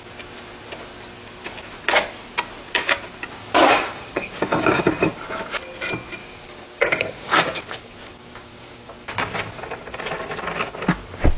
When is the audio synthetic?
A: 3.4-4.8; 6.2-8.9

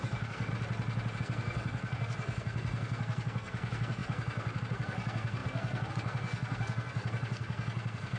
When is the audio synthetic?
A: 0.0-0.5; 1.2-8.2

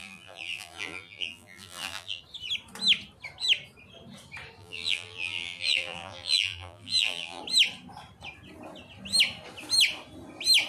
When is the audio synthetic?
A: 0.0-2.2; 4.6-7.4